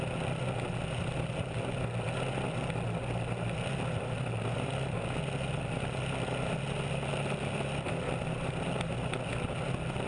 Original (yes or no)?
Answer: yes